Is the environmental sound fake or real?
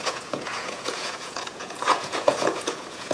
fake